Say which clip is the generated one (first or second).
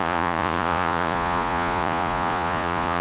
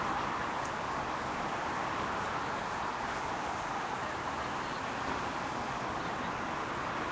first